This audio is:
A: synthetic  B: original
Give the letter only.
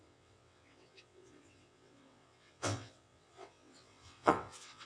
A